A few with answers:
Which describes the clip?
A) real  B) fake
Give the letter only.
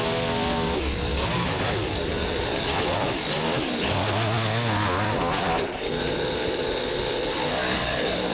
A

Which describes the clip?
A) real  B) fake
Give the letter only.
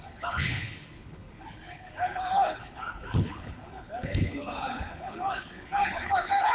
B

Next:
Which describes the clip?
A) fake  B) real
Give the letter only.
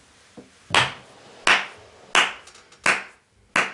B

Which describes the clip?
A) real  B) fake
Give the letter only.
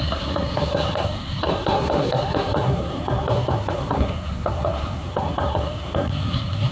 B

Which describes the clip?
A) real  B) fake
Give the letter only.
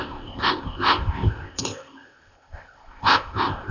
B